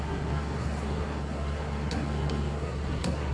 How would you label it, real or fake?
fake